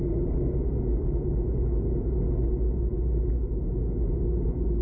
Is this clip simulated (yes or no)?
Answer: no